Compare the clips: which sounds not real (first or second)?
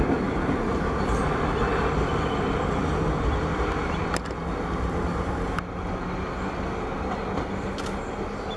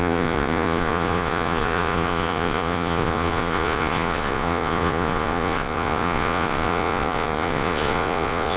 second